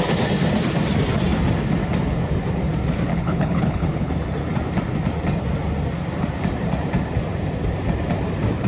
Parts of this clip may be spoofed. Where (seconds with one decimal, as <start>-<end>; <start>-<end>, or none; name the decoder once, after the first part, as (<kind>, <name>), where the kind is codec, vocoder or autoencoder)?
3.1-4.1 (codec, HILCodec)